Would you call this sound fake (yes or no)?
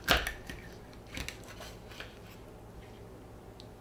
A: no